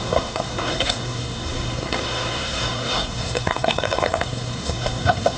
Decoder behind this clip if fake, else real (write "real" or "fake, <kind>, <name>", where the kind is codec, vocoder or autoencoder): fake, codec, SNAC